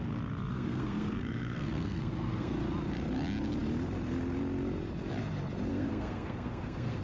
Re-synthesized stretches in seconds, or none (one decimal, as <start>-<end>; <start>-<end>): 0.5-2.5; 5.7-7.0